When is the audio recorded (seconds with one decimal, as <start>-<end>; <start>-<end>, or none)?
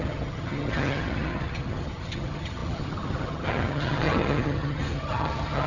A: none